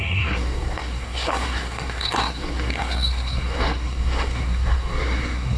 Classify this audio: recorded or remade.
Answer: remade